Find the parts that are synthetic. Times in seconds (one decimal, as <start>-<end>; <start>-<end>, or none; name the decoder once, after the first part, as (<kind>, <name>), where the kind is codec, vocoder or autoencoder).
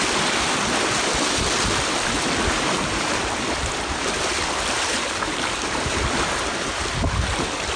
none